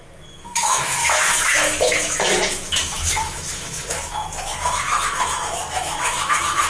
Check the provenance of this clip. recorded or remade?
remade